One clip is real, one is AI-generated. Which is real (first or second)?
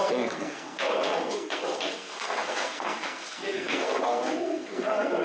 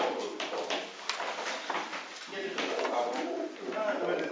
second